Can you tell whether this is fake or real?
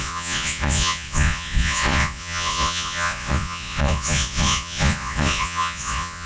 fake